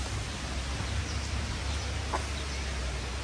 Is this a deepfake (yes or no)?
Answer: no